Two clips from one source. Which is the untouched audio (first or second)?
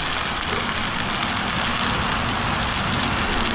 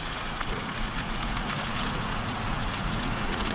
first